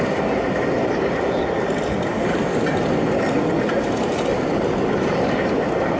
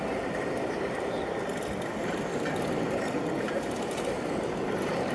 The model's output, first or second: second